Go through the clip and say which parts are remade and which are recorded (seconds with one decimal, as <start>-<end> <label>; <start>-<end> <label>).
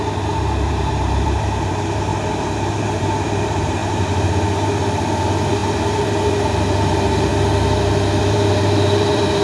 0.0-7.3 remade; 7.3-8.2 recorded; 8.2-9.4 remade